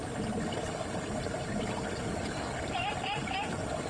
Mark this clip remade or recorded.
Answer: recorded